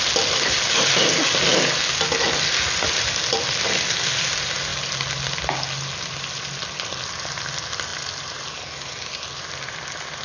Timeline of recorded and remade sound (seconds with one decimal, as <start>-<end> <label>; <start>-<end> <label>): 0.0-10.2 recorded